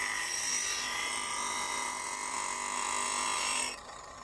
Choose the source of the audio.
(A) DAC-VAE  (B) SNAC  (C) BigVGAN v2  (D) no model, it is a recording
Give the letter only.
D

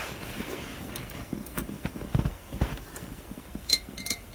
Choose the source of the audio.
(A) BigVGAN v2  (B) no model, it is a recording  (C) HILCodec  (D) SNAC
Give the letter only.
D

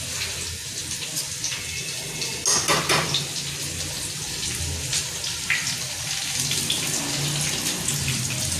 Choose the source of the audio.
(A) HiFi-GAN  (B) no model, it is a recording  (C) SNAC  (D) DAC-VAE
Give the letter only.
B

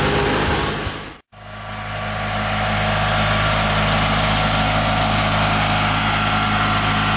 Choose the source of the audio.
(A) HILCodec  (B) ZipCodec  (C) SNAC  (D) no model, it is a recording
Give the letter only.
D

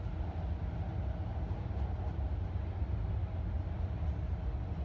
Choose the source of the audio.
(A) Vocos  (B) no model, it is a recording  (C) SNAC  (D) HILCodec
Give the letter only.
B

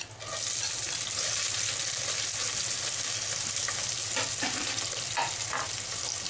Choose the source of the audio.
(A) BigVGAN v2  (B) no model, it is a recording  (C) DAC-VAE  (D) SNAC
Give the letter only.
B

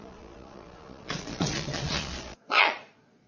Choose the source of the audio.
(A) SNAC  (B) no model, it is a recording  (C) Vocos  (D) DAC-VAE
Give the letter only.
C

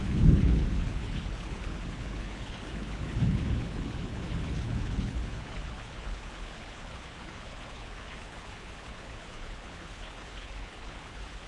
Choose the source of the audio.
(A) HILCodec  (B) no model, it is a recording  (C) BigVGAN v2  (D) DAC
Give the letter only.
A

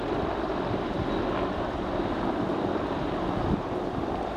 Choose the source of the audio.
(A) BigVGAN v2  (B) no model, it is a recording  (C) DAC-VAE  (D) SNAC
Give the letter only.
A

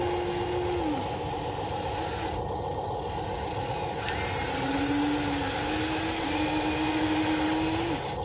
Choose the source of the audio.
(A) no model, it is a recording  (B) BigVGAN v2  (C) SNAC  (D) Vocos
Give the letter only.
A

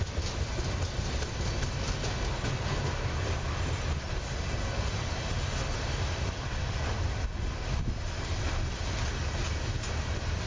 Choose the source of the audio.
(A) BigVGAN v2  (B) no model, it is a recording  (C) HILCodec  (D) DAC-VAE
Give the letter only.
B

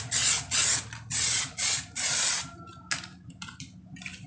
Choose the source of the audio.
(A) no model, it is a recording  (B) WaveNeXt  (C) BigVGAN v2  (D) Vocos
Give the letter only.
A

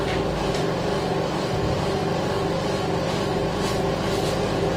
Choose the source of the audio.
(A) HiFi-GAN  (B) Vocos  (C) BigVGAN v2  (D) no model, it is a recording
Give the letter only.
D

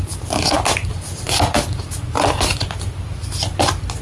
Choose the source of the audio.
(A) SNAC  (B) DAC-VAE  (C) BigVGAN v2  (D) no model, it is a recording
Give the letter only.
D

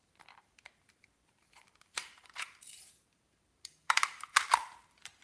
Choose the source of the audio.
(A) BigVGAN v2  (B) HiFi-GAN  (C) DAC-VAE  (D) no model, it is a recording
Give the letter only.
A